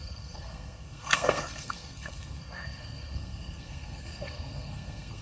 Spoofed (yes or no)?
yes